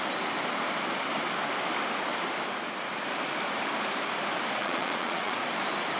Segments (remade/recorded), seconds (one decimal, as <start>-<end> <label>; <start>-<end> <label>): 0.0-4.6 recorded; 4.6-5.4 remade; 5.4-6.0 recorded